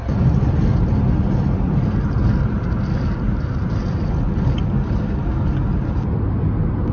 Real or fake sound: real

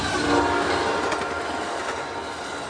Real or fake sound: real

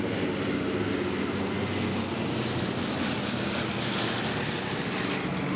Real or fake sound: real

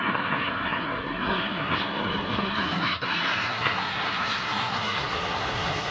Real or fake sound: fake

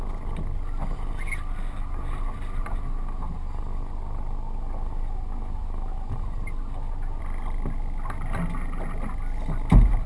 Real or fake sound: real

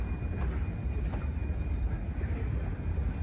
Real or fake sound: real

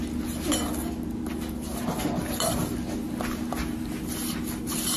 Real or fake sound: real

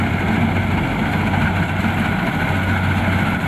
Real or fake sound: real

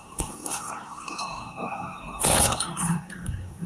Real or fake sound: fake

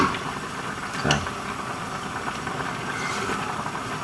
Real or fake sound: real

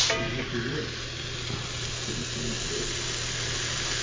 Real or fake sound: real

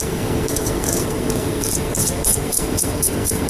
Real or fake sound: fake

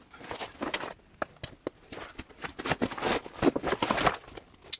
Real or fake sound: real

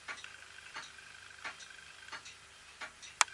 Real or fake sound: real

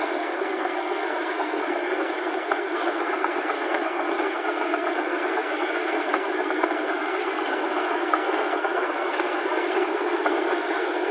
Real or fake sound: fake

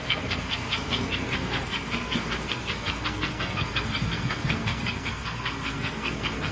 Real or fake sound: fake